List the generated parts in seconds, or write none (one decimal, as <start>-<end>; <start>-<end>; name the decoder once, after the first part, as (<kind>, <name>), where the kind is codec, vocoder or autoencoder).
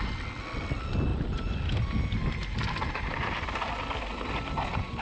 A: 1.1-1.6 (vocoder, BigVGAN v2); 2.4-4.1